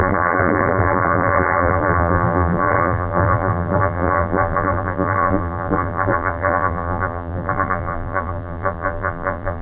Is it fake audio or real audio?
fake